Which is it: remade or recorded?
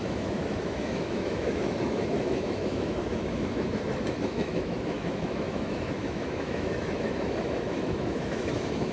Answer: remade